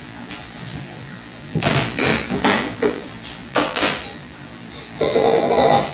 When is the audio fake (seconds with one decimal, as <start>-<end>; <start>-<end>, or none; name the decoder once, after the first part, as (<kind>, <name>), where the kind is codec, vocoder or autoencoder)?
0.0-5.9 (vocoder, BigVGAN v2)